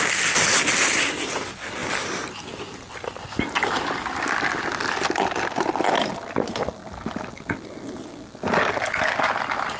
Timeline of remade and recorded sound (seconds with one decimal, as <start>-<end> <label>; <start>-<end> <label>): 0.0-9.8 recorded